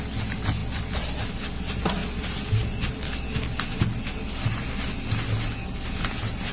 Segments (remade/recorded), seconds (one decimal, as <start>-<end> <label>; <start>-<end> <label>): 0.0-6.5 recorded